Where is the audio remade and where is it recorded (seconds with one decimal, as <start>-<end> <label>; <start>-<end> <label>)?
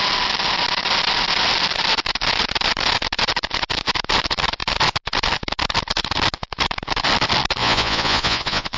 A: 0.0-7.6 recorded; 7.6-8.8 remade